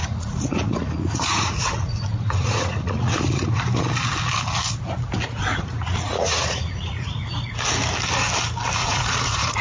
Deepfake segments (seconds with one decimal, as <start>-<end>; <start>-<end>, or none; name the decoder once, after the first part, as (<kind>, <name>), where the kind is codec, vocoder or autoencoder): 0.0-3.6 (vocoder, Vocos); 5.4-7.3; 8.8-9.6